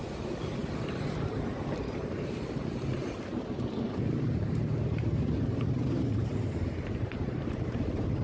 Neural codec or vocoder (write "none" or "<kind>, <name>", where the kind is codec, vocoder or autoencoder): vocoder, BigVGAN v2